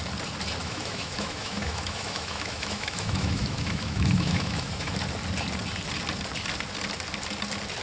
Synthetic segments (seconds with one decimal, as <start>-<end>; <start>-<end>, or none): 0.6-5.0